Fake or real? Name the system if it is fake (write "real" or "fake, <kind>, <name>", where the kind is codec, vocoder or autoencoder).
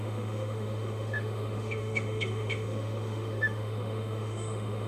fake, autoencoder, DAC-VAE